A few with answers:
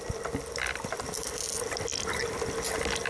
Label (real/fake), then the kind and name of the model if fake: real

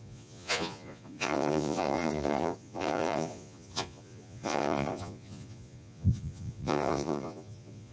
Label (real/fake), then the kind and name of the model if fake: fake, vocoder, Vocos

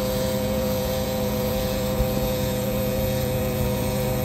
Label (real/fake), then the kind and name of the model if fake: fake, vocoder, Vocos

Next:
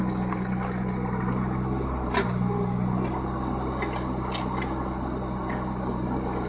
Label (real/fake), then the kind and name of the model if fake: real